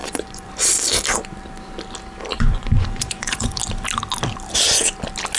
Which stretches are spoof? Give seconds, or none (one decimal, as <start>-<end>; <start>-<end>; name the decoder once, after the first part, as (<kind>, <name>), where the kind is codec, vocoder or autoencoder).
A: 0.0-0.5 (vocoder, Vocos); 2.3-3.6